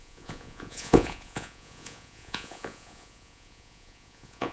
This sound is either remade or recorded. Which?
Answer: remade